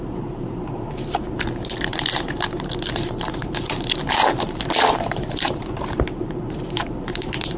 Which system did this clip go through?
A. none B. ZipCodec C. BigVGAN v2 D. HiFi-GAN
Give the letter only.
C